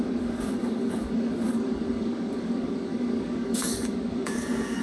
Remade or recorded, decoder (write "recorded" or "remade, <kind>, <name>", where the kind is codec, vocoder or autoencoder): remade, codec, DAC